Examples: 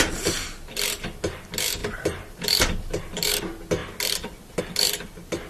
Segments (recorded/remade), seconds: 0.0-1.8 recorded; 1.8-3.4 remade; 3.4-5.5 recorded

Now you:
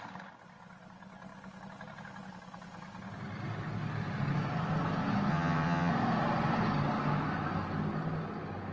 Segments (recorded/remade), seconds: 0.0-5.3 recorded; 5.3-5.9 remade; 5.9-8.7 recorded

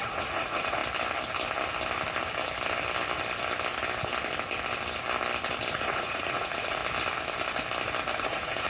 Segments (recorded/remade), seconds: 0.0-0.8 remade; 0.8-5.7 recorded; 5.7-6.8 remade; 6.8-8.2 recorded; 8.2-8.7 remade

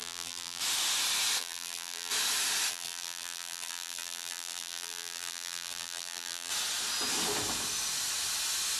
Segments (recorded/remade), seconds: 0.0-0.6 remade; 0.6-1.4 recorded; 1.4-2.1 remade; 2.1-2.7 recorded; 2.7-6.5 remade; 6.5-8.8 recorded

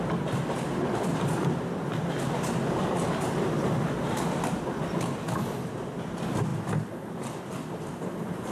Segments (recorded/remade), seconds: 0.0-8.5 recorded